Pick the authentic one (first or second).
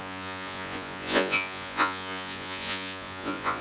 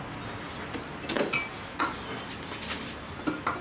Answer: second